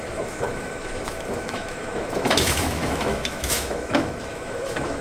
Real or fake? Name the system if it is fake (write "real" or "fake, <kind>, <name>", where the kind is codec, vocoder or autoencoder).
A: fake, autoencoder, DAC-VAE